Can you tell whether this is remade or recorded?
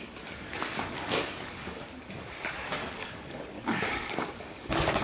remade